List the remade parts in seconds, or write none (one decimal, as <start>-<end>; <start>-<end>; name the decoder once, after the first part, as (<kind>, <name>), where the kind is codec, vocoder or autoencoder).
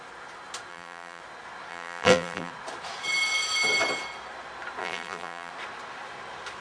0.7-1.2 (vocoder, BigVGAN v2); 1.7-2.5; 4.8-5.5